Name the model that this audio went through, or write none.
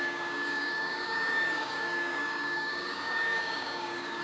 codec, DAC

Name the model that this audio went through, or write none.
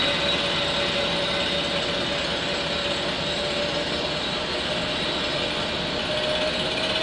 none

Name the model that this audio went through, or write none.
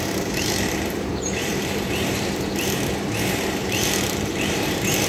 vocoder, BigVGAN v2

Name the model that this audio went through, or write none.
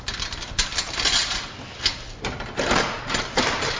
none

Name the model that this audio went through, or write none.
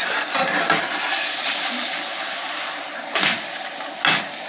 none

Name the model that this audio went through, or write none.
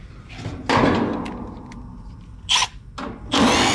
none